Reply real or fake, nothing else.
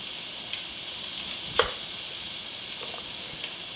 real